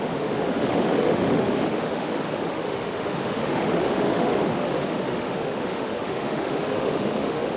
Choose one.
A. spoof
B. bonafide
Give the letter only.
A